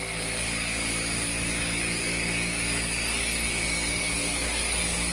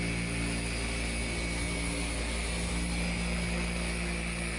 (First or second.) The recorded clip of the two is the second